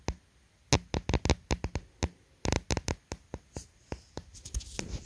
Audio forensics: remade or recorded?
recorded